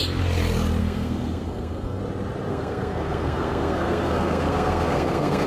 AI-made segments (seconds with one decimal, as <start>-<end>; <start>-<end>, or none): 0.8-2.0; 2.5-5.5